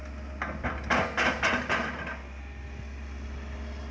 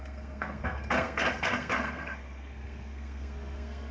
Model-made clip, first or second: second